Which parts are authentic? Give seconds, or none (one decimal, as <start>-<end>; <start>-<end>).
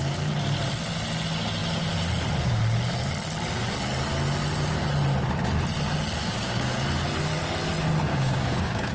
0.0-6.2; 6.7-8.1